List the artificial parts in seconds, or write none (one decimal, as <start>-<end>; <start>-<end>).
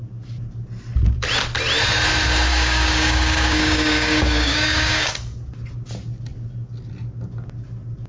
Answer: 2.5-5.1